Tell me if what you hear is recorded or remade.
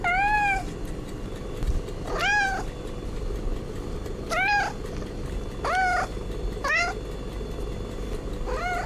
recorded